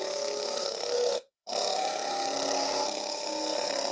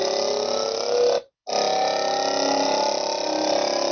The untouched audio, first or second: second